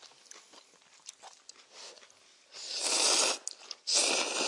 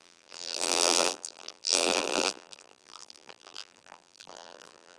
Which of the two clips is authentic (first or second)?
first